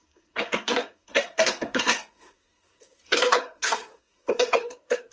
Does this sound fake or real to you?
fake